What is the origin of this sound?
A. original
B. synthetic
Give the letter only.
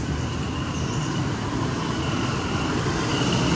B